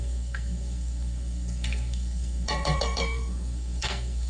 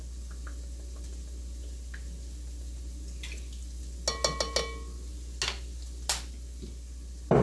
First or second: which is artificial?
first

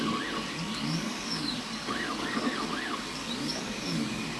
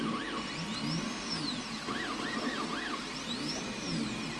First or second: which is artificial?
first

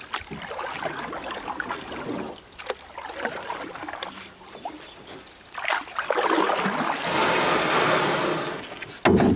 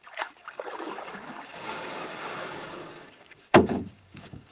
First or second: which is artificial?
second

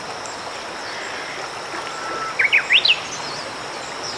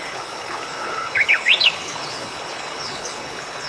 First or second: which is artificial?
second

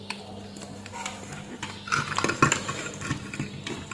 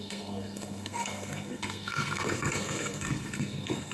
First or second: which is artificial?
second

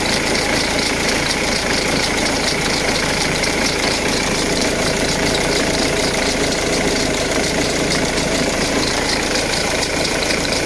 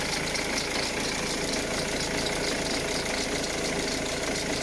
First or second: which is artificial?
first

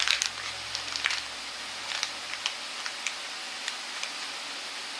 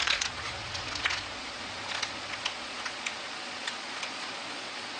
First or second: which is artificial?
second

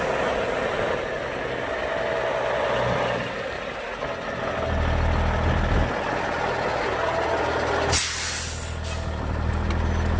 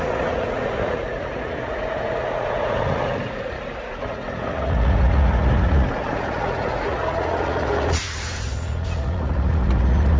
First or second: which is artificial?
second